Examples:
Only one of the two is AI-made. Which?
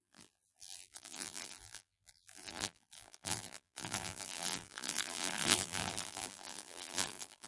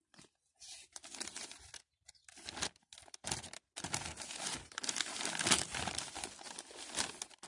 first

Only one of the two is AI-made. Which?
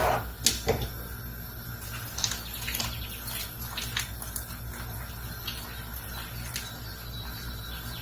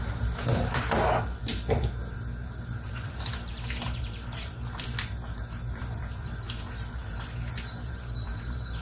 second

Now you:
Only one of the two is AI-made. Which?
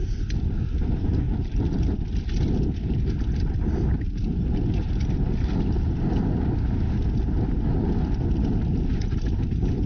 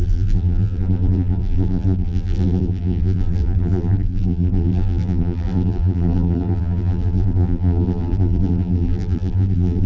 second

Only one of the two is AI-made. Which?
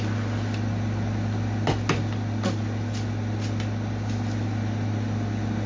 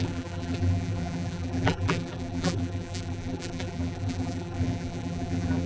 second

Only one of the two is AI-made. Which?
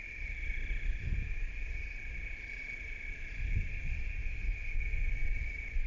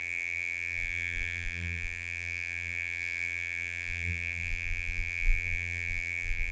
second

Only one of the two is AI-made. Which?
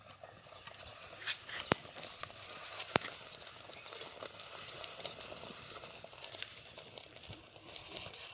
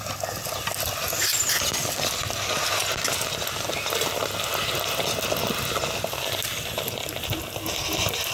first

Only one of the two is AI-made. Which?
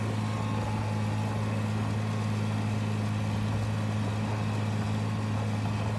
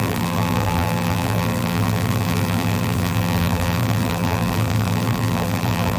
second